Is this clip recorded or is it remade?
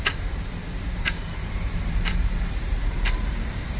remade